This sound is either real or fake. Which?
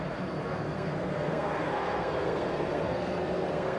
fake